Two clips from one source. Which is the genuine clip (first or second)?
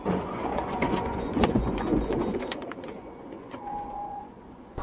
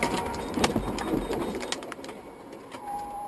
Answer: second